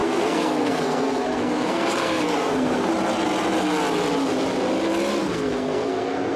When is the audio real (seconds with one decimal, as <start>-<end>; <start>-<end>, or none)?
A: 2.9-5.2